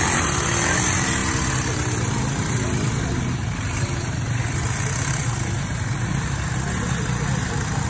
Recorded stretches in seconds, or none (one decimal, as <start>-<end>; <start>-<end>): 0.0-7.9